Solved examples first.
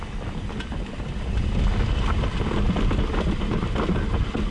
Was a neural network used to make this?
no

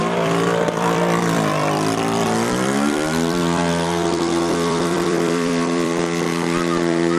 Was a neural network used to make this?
yes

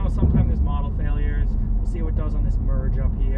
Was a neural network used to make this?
no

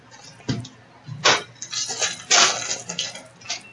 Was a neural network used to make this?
no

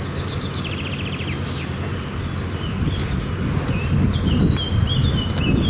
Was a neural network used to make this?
no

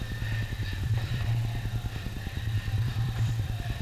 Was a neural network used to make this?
yes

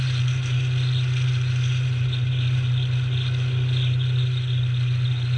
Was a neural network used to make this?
no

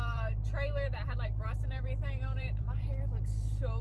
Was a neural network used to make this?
yes